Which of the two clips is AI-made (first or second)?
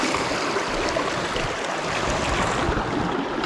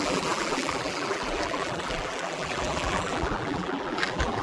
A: second